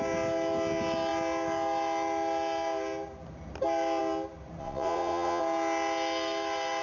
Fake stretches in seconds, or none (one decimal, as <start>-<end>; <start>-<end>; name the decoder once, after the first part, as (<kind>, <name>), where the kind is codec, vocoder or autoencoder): 4.6-5.4 (vocoder, Vocos)